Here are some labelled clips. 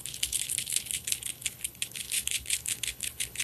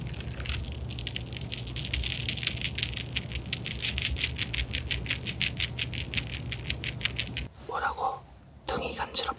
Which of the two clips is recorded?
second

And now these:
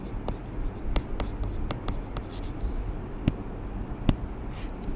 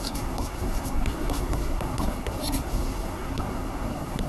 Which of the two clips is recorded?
first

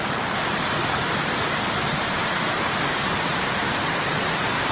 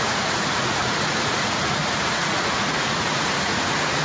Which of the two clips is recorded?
first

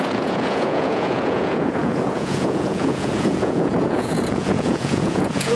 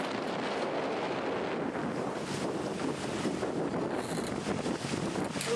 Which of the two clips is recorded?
second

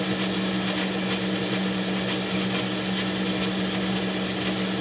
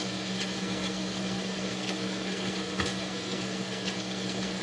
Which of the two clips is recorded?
first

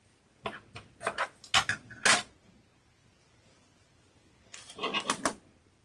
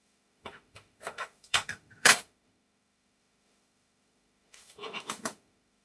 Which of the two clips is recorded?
first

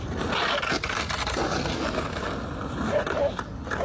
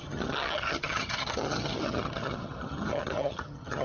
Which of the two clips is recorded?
first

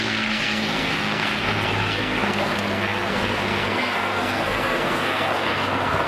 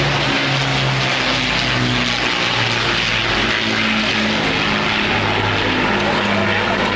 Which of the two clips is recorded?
second